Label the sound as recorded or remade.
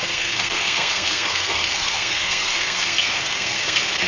remade